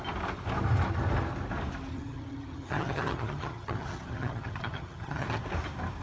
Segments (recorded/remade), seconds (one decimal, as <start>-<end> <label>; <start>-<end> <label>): 0.0-1.9 recorded; 1.9-5.4 remade; 5.4-6.0 recorded